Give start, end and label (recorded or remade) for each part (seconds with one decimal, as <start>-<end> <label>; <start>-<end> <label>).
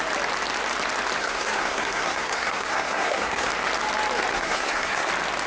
0.0-1.2 recorded; 1.2-3.5 remade; 3.5-4.3 recorded; 4.3-5.1 remade; 5.1-5.5 recorded